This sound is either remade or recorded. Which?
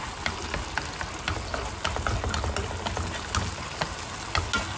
recorded